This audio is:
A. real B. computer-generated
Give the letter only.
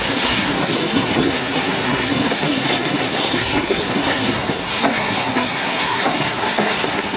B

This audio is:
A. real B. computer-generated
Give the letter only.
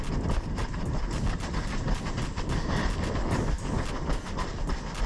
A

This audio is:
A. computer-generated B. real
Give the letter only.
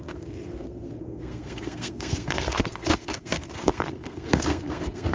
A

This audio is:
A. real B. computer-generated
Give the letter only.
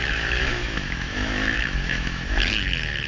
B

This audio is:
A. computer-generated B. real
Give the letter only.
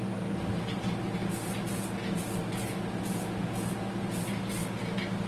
B